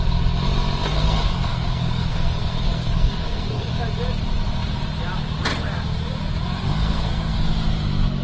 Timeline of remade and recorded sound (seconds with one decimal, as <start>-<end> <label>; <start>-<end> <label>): 0.0-0.9 recorded; 0.9-3.7 remade; 3.7-6.8 recorded; 6.8-7.4 remade; 7.4-8.2 recorded